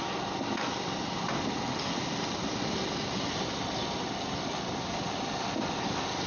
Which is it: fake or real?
real